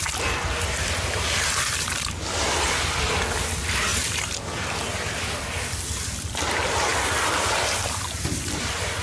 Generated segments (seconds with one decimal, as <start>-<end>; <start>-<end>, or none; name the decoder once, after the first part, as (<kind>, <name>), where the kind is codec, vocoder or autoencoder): none